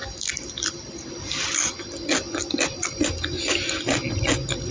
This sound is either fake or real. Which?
real